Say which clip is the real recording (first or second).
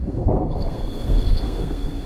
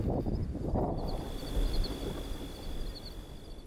second